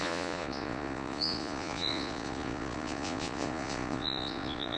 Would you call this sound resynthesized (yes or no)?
yes